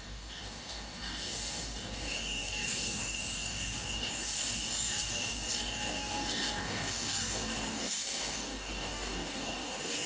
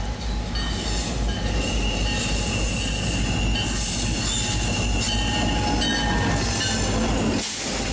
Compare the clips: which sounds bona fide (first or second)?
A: second